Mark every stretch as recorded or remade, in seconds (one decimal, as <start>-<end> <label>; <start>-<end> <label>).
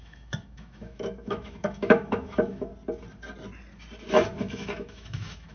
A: 0.0-2.7 remade; 2.7-4.4 recorded; 4.4-5.5 remade